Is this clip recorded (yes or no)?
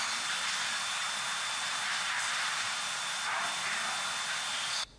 no